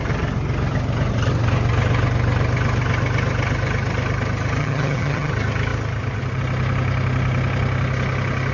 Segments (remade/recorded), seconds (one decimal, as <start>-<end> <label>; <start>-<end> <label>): 0.0-4.6 recorded; 4.6-5.3 remade; 5.3-8.5 recorded